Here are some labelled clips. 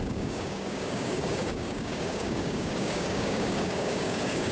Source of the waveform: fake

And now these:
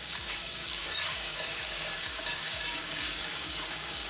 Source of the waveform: fake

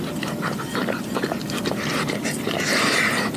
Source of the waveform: real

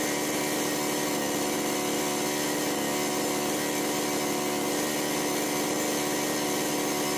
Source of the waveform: real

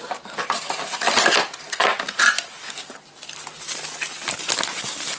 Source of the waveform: real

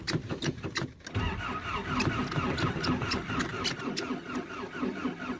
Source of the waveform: real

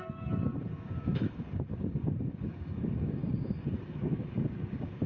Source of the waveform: fake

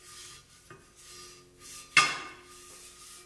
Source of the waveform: real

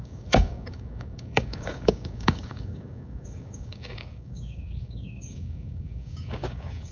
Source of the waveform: fake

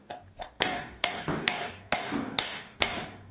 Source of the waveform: fake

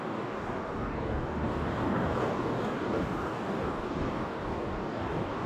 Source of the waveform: fake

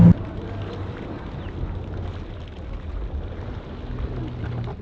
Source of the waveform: real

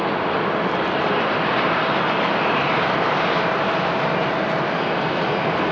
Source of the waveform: real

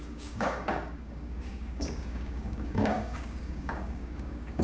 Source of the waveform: fake